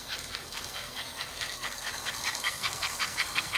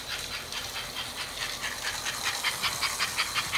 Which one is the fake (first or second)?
first